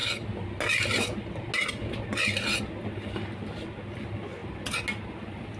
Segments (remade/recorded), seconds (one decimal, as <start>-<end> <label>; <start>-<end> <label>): 0.0-5.6 recorded